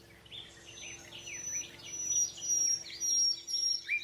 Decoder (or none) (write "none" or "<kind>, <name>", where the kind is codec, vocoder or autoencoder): none